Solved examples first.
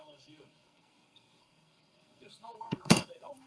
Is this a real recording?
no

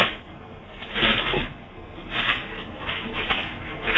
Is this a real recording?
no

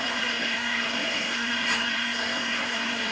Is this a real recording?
no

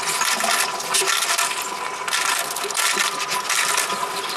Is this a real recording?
yes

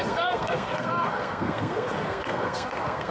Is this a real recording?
no